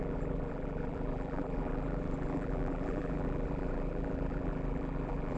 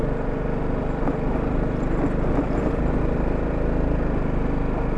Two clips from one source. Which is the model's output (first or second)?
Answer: first